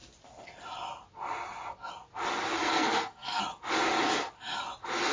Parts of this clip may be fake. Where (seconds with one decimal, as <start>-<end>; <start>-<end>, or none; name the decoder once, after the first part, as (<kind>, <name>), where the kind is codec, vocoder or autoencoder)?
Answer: 2.5-3.4 (codec, SNAC)